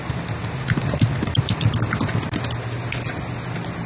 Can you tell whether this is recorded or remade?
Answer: recorded